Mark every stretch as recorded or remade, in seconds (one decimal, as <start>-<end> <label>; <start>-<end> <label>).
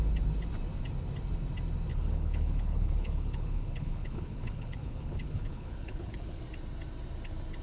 0.0-1.9 recorded; 1.9-6.4 remade; 6.4-7.6 recorded